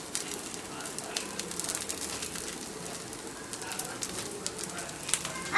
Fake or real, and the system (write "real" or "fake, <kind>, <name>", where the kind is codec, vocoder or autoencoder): real